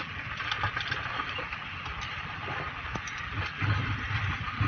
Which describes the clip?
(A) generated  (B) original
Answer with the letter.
B